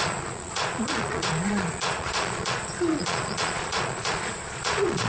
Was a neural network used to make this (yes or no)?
yes